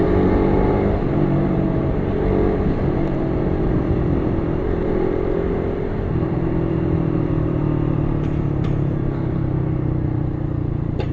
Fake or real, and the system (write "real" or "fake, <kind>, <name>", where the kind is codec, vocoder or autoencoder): fake, vocoder, BigVGAN v2